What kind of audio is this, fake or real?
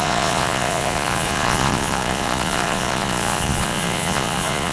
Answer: fake